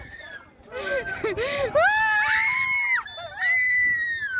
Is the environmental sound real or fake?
real